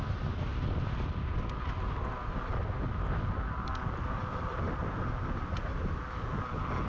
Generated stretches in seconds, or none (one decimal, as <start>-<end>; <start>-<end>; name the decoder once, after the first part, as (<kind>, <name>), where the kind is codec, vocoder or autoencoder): none